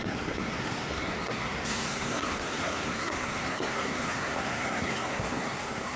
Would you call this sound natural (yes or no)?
no